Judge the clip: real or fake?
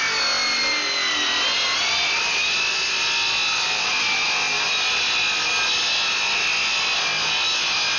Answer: real